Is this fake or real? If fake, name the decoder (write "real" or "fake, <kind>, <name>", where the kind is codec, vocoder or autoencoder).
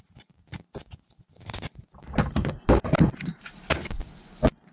real